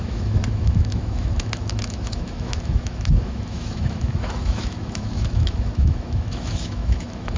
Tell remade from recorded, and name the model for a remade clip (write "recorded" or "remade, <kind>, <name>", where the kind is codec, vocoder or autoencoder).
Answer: remade, autoencoder, DAC-VAE